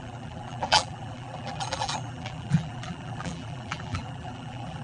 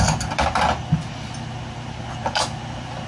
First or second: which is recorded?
second